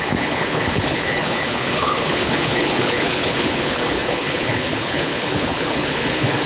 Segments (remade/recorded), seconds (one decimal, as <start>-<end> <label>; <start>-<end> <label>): 0.0-6.5 remade